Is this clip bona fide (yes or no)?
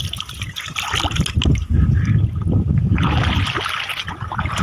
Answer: yes